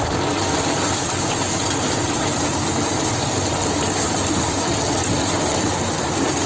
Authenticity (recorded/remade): recorded